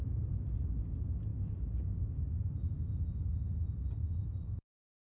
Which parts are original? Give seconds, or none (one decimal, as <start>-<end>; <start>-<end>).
0.0-5.1